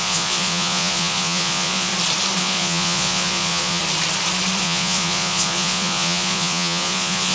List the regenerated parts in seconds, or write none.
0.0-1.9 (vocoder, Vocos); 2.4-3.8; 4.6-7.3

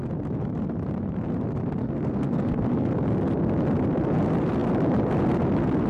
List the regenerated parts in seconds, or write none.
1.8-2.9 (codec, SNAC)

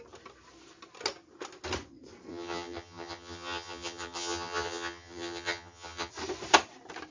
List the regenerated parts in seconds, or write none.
2.3-6.1 (vocoder, HiFi-GAN)